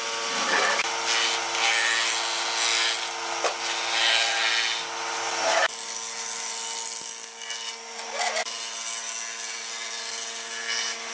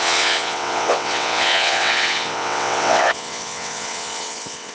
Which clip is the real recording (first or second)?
first